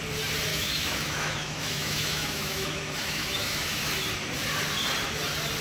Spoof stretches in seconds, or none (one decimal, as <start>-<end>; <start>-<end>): 0.5-3.9